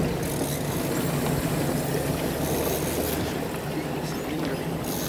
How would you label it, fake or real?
real